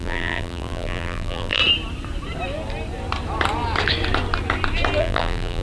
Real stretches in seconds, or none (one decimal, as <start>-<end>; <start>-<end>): 1.6-5.0